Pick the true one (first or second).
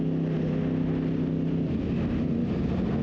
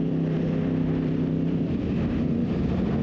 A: first